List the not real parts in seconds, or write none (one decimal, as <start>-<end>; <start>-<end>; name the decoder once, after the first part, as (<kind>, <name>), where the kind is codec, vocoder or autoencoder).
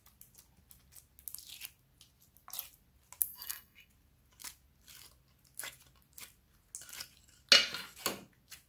3.3-3.9 (codec, SNAC)